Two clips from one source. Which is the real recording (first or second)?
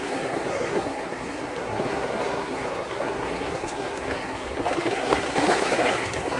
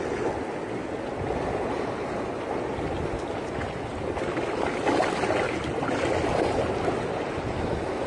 second